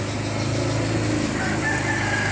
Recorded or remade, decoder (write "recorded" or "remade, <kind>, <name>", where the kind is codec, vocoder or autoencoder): recorded